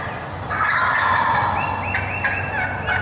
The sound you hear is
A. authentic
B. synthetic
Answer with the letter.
A